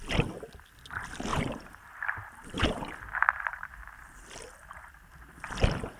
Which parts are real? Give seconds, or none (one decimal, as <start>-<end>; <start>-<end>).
0.0-1.3; 4.4-6.0